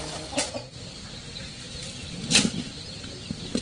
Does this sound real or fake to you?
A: real